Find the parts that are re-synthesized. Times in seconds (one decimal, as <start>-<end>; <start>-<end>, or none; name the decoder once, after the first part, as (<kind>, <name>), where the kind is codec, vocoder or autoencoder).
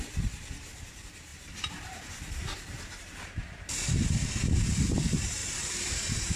0.0-6.4 (vocoder, BigVGAN v2)